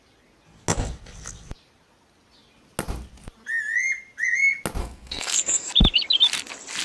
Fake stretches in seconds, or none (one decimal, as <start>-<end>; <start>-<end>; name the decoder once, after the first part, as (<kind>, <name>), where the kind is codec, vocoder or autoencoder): 4.8-5.7 (codec, SNAC)